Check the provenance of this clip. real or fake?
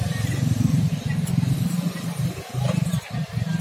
real